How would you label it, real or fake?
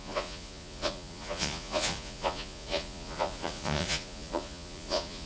fake